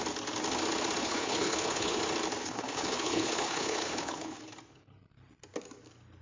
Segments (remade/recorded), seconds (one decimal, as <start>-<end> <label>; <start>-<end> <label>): 0.0-1.0 recorded; 1.0-2.0 remade; 2.0-2.4 recorded; 2.4-4.4 remade; 4.4-6.2 recorded